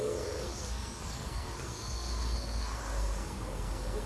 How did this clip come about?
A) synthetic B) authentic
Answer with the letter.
A